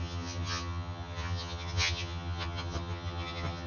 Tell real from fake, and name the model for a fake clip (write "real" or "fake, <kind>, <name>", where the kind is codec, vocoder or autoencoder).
fake, vocoder, HiFi-GAN